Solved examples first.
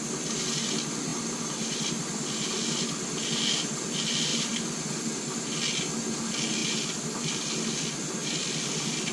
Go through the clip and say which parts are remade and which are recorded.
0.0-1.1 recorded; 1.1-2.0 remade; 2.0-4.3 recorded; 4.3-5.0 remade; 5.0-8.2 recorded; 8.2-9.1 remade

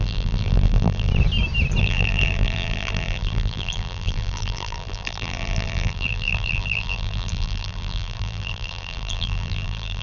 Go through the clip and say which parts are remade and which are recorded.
0.0-1.1 remade; 1.1-1.8 recorded; 1.8-10.0 remade

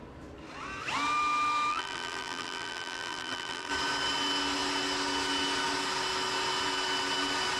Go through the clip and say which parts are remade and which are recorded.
0.0-1.7 recorded; 1.7-3.7 remade; 3.7-7.6 recorded

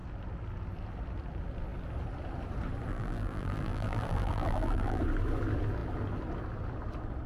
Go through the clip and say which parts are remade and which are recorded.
0.0-2.9 recorded; 2.9-5.0 remade; 5.0-7.3 recorded